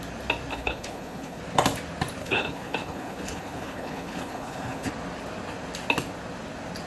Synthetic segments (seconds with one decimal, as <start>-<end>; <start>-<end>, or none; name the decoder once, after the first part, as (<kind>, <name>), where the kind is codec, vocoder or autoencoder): 0.5-1.4 (codec, HILCodec); 2.2-4.9